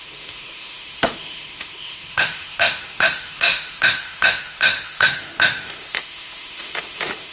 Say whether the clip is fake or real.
fake